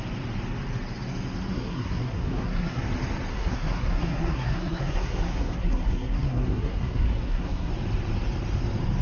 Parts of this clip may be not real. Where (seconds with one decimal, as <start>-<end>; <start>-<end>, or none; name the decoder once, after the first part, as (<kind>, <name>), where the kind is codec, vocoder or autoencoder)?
1.5-2.8 (codec, SNAC); 3.3-7.7